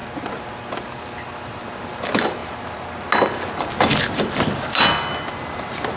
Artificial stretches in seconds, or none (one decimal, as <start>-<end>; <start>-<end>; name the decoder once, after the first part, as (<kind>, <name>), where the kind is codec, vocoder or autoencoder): none